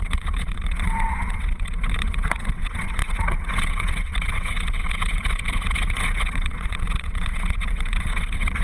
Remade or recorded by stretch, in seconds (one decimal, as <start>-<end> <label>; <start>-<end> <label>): 0.0-8.6 remade